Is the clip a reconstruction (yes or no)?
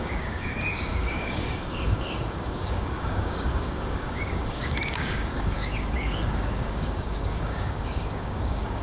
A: yes